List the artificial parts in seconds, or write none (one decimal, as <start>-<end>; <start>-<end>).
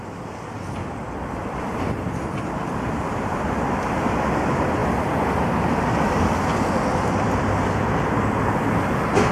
0.8-3.0; 6.5-7.1